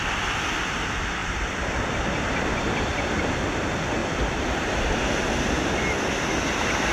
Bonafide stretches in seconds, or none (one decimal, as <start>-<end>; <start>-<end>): 0.0-4.0; 5.3-6.9